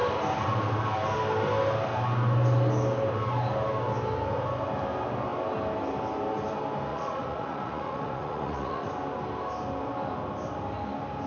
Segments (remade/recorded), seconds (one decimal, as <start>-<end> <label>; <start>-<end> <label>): 0.0-6.9 recorded; 6.9-8.9 remade; 8.9-11.3 recorded

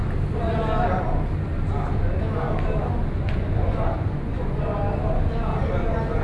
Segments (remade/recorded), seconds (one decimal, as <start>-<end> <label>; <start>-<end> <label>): 0.0-3.2 recorded; 3.2-4.6 remade; 4.6-6.2 recorded

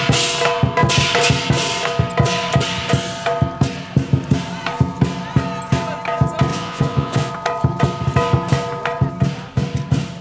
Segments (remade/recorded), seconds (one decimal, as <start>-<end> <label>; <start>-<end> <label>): 0.0-6.5 recorded; 6.5-7.3 remade; 7.3-10.2 recorded